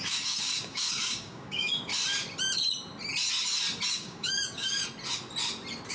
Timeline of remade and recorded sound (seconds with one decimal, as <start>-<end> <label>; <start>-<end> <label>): 0.0-1.9 remade; 1.9-3.9 recorded; 3.9-4.8 remade; 4.8-5.9 recorded